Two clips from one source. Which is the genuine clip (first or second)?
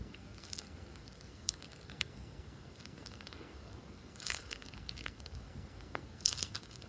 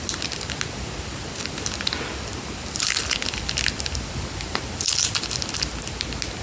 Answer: second